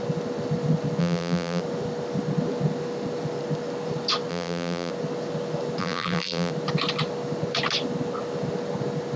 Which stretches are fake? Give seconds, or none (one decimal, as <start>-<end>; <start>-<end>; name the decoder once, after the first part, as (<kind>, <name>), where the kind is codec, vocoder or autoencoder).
1.0-1.6 (vocoder, BigVGAN v2); 4.3-4.9; 5.8-6.5